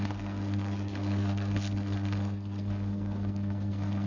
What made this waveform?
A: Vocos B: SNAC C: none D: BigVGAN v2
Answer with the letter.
B